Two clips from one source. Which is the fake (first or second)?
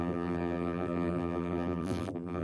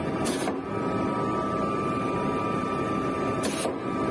first